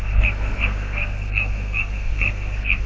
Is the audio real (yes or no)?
no